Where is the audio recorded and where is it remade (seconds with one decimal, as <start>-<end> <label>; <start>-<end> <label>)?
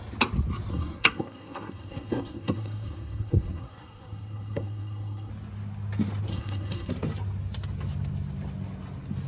0.0-0.7 recorded; 0.7-5.3 remade; 5.3-6.3 recorded; 6.3-6.9 remade; 6.9-9.3 recorded